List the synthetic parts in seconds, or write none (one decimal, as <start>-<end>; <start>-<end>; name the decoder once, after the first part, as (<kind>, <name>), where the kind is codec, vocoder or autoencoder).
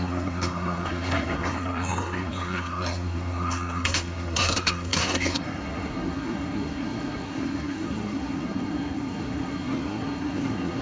0.0-10.8 (codec, SNAC)